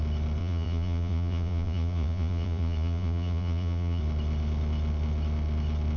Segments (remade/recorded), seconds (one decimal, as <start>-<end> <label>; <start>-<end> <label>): 0.0-0.4 recorded; 0.4-4.0 remade; 4.0-6.0 recorded